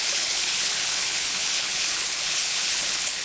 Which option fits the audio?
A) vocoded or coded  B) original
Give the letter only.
A